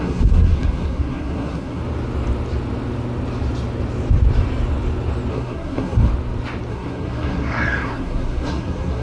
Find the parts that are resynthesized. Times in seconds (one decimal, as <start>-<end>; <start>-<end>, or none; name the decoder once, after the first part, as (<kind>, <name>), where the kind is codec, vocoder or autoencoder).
0.0-1.8 (codec, SNAC); 5.3-6.1; 6.7-9.0